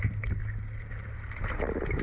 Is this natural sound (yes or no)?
yes